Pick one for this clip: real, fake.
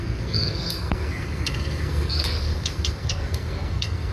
fake